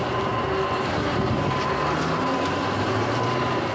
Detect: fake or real real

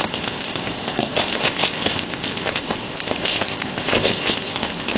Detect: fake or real fake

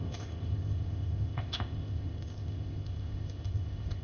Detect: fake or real fake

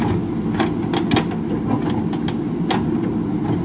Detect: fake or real real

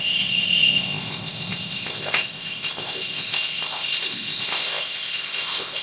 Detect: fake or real fake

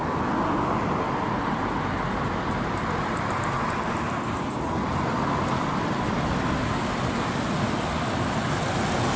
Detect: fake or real real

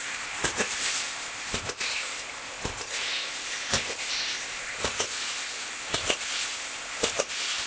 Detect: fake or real fake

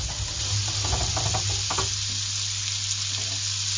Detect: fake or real real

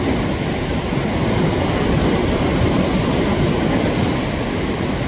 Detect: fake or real real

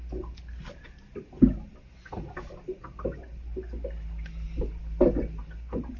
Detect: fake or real real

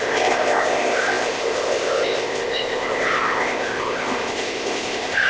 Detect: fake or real fake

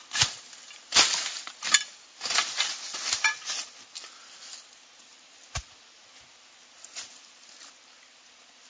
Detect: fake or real real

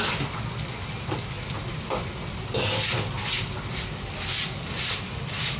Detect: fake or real real